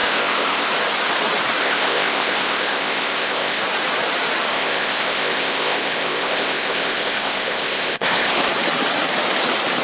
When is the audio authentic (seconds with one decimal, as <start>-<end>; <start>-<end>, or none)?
0.7-1.6; 3.6-4.5; 8.4-9.8